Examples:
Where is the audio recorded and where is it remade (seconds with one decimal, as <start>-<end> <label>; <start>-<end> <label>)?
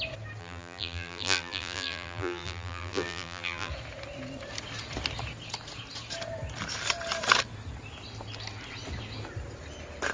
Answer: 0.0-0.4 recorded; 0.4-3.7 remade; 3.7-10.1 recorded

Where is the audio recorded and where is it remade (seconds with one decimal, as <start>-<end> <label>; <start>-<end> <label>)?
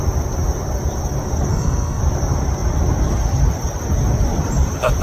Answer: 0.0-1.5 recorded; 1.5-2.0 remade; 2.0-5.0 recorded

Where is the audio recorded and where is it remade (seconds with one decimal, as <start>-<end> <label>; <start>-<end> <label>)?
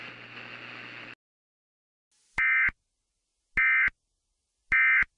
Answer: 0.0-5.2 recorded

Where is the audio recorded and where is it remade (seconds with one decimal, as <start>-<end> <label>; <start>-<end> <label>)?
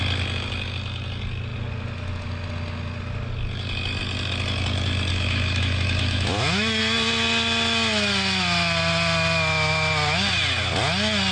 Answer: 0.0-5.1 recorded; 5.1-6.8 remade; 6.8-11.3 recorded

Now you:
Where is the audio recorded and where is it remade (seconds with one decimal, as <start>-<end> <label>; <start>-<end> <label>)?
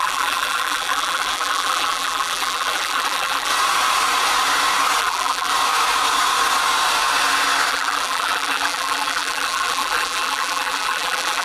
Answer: 0.0-3.5 remade; 3.5-5.0 recorded; 5.0-5.5 remade; 5.5-7.7 recorded; 7.7-11.4 remade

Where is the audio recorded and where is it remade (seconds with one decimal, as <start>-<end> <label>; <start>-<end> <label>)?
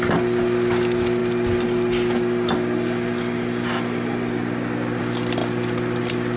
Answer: 0.0-6.4 recorded